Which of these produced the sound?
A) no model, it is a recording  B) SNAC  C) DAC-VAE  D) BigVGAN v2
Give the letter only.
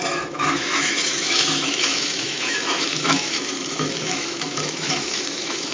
C